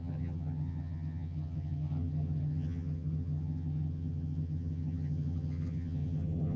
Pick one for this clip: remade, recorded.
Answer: remade